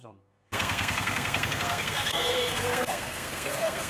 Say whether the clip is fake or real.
fake